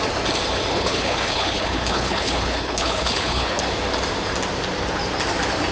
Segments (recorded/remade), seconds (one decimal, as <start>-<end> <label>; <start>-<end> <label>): 0.0-0.7 recorded; 0.7-3.6 remade; 3.6-5.7 recorded